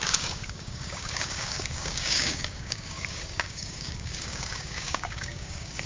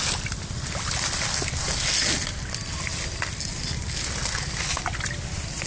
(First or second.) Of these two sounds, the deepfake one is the first